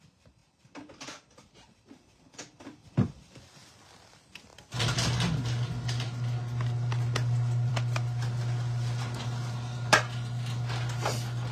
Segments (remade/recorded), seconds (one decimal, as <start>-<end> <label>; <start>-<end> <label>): 0.0-11.5 recorded